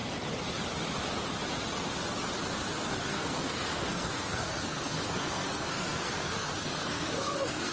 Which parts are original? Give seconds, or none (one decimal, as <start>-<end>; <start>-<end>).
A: 0.0-2.8

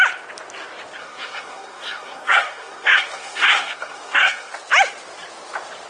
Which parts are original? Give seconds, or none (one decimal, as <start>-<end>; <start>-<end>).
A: 0.0-1.0; 4.5-5.9

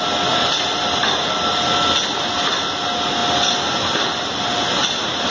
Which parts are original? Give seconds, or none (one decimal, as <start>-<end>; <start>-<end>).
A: 0.0-5.3

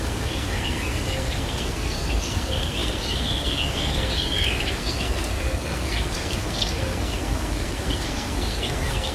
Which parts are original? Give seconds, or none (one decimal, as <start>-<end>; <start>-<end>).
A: none

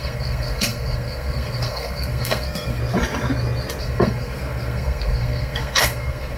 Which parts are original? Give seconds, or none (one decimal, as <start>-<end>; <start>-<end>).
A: 2.8-3.8

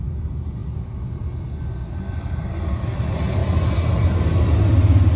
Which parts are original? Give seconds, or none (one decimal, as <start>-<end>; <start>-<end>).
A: 0.0-5.2

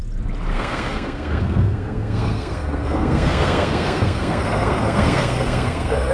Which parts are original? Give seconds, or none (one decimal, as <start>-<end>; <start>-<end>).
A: 0.0-0.5

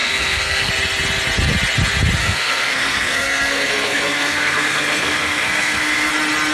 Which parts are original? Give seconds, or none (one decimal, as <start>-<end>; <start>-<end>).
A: 0.7-2.2; 6.1-6.5